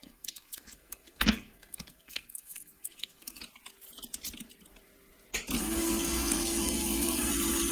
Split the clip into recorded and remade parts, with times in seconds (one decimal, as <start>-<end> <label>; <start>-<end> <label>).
0.0-3.4 remade; 3.4-5.6 recorded; 5.6-7.3 remade; 7.3-7.7 recorded